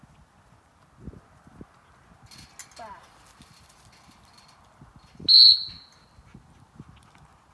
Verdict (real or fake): real